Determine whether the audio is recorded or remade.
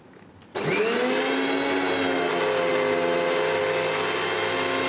recorded